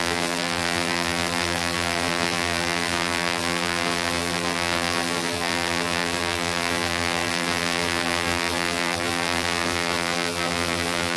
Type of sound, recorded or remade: remade